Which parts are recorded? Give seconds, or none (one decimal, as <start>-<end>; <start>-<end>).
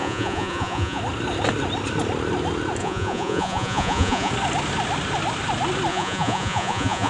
1.0-2.8; 4.3-5.9